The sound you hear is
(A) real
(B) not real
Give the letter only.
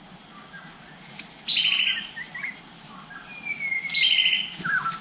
A